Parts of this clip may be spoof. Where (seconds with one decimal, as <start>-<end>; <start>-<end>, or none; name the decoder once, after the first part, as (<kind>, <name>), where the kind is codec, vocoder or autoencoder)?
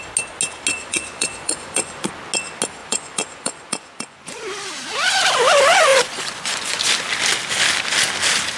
0.7-2.1 (vocoder, Vocos); 2.8-4.4; 5.9-6.8